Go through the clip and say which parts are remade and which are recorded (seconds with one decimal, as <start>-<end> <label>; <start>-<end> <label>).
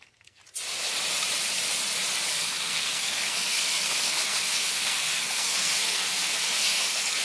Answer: 0.0-0.4 remade; 0.4-2.3 recorded; 2.3-7.2 remade